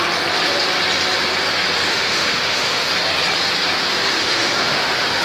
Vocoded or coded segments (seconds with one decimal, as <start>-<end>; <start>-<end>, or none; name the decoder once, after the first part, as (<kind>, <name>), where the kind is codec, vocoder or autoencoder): 1.9-2.9 (autoencoder, DAC-VAE); 3.9-5.2